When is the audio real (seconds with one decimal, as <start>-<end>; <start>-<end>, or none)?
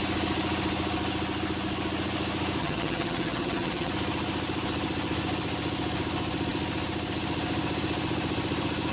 0.0-2.6; 3.9-8.9